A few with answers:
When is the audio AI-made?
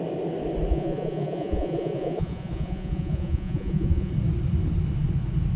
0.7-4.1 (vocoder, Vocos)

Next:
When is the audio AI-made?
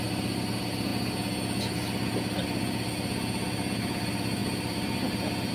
none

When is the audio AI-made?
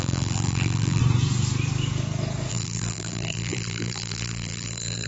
0.0-1.0 (vocoder, BigVGAN v2); 2.5-5.1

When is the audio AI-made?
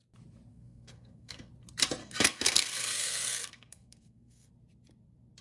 0.5-1.5 (codec, SNAC); 2.0-4.5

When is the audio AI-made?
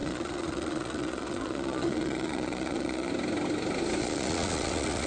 0.0-3.1 (vocoder, Vocos); 4.0-5.1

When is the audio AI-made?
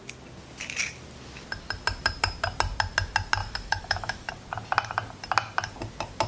3.4-4.3 (autoencoder, DAC-VAE)